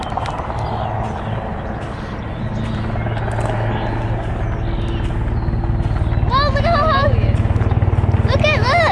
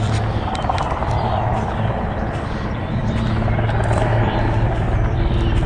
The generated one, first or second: second